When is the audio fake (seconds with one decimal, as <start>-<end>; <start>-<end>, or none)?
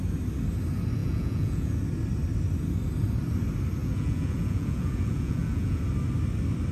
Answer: 1.0-1.8; 3.8-5.8